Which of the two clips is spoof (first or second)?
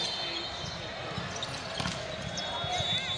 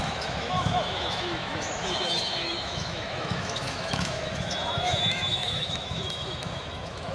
second